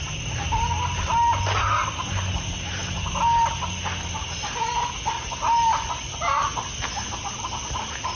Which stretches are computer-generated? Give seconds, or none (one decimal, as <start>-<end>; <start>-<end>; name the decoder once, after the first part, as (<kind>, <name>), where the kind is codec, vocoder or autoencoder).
none